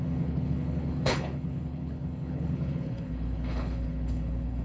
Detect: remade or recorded remade